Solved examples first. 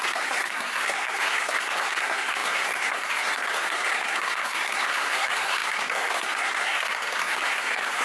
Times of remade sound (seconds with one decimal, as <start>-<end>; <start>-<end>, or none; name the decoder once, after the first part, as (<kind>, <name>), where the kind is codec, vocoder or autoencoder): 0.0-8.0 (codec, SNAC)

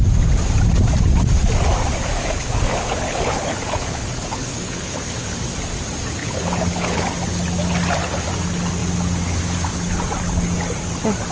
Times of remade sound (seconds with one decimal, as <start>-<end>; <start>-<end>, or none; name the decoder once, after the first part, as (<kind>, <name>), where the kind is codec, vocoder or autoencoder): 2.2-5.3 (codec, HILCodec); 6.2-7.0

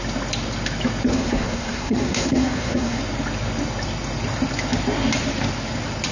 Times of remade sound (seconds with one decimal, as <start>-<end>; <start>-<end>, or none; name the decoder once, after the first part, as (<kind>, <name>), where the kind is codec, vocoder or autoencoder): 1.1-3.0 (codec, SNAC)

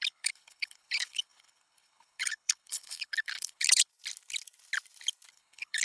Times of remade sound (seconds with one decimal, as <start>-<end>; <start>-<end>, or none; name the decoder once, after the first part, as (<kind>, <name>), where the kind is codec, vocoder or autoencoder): 0.0-3.9 (codec, HILCodec); 5.3-5.8

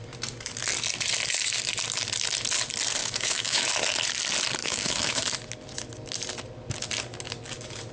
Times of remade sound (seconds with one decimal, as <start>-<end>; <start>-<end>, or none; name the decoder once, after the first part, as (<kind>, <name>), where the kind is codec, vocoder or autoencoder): 3.0-3.7 (autoencoder, DAC-VAE); 4.6-5.2

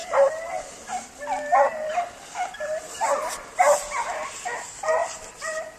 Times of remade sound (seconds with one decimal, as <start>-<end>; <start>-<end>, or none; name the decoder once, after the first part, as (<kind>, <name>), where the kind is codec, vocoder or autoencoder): none